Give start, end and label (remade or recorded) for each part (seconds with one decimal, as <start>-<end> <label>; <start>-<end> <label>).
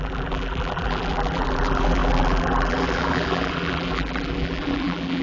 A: 0.0-5.2 remade